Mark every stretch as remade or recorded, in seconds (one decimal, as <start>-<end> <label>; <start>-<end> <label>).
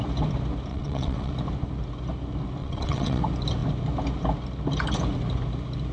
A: 0.0-0.7 recorded; 0.7-1.3 remade; 1.3-2.6 recorded; 2.6-3.2 remade; 3.2-5.9 recorded